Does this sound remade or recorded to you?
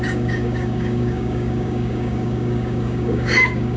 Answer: remade